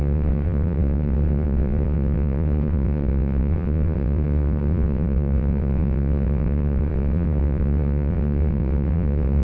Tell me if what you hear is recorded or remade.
remade